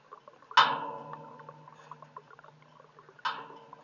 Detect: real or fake real